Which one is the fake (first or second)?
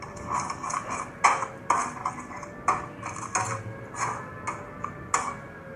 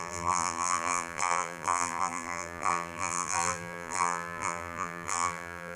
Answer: second